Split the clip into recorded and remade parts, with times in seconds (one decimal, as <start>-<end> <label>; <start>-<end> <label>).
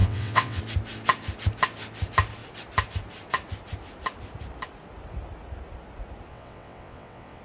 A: 0.0-0.6 remade; 0.6-6.3 recorded; 6.3-7.4 remade